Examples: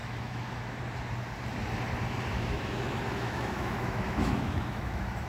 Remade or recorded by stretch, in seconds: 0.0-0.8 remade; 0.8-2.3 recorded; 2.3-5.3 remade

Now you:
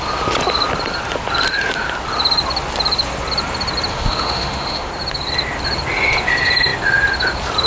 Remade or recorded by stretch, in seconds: 0.0-3.9 recorded; 3.9-4.9 remade; 4.9-7.7 recorded

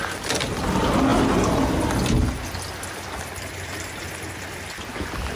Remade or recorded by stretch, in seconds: 0.0-5.4 recorded

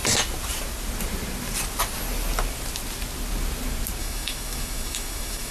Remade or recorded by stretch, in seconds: 0.0-4.0 recorded; 4.0-5.5 remade